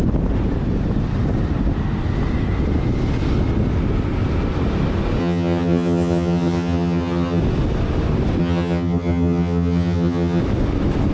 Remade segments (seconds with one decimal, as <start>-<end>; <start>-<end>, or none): 5.2-7.4; 8.4-10.4